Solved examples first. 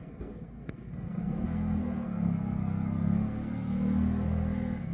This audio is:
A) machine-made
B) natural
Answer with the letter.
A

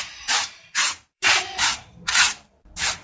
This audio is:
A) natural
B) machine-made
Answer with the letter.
B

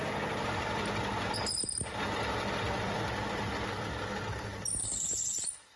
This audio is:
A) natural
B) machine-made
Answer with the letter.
A